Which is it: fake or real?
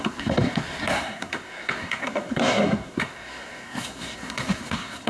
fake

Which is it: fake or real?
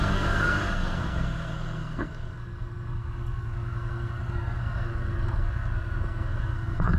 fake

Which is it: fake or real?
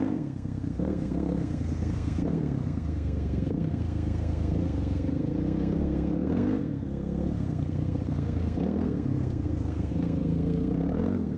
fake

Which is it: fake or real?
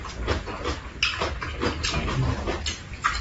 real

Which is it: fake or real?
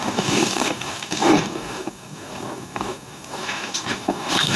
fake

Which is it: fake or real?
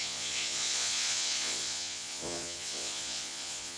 fake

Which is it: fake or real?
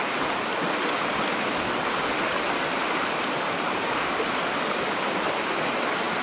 real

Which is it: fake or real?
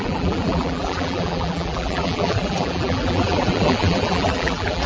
fake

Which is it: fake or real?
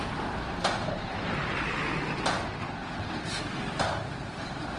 real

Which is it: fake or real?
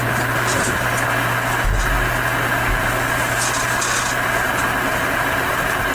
real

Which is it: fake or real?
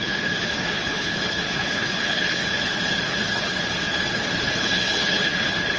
fake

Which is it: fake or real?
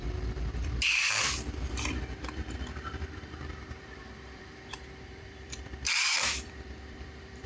fake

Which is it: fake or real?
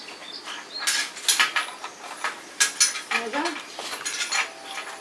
real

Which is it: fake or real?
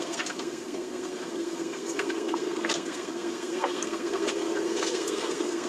fake